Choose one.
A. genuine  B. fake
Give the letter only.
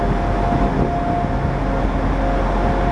A